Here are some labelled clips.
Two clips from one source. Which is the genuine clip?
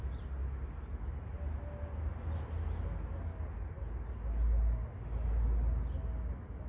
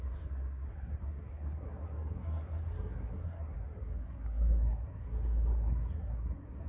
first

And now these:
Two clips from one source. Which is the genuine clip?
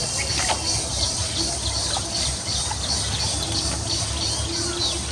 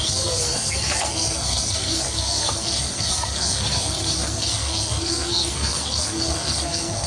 first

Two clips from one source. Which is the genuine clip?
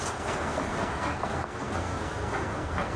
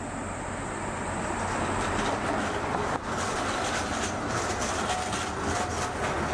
second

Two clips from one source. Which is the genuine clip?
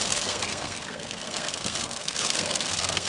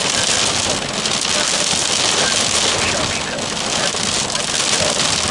second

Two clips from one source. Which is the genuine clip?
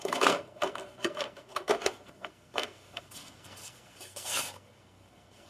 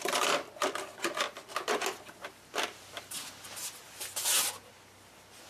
second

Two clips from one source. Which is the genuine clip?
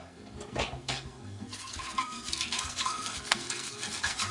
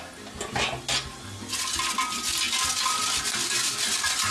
second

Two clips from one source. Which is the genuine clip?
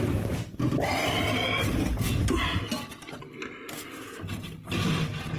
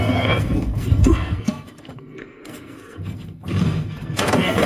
first